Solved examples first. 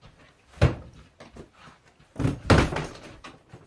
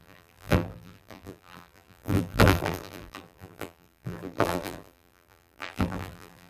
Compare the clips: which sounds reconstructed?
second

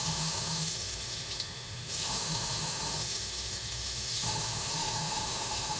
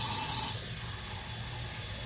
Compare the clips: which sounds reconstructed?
first